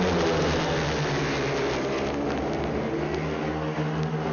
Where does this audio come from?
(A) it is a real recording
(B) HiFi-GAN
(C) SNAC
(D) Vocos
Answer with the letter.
A